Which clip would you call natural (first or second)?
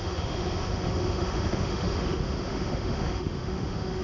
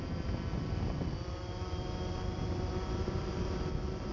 second